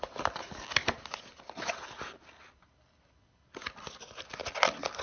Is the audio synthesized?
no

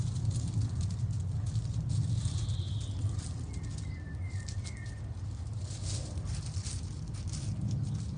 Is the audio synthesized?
no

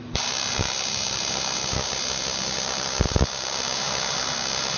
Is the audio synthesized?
yes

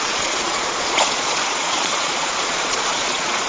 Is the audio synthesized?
yes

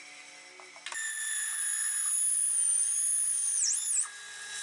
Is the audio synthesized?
no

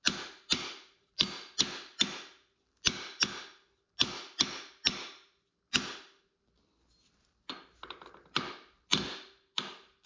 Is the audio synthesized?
no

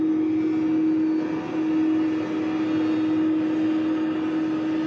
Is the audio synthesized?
no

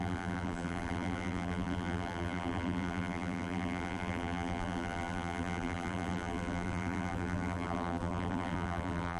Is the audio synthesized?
yes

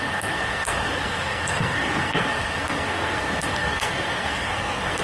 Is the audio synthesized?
yes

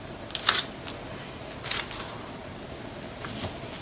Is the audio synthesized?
no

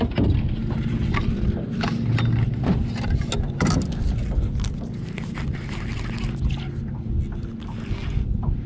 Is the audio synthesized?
no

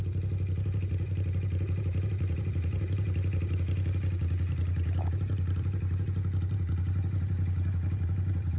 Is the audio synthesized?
yes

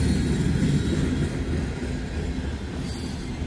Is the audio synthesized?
no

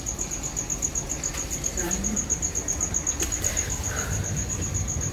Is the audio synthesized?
no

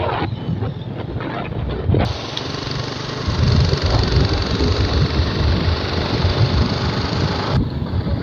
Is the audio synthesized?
no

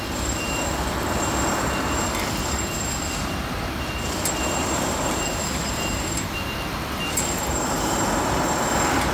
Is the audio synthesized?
yes